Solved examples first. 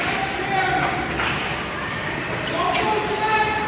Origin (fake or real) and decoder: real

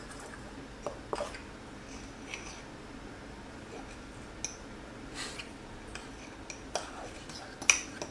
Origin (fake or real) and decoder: real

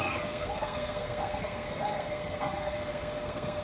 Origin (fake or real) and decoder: fake, codec, SNAC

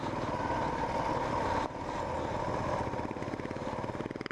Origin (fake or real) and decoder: real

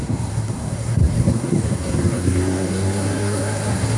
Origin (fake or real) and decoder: fake, codec, SNAC